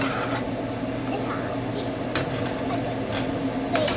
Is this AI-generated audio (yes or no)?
no